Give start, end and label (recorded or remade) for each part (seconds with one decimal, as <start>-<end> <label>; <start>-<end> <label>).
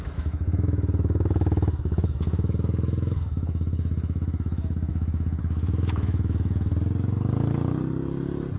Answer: 0.0-6.7 remade; 6.7-8.6 recorded